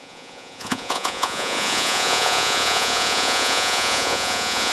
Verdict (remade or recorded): remade